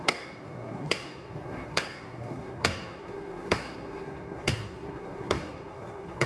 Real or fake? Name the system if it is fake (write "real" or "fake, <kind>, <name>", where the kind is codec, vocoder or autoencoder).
fake, codec, SNAC